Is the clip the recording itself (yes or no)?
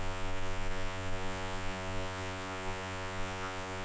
no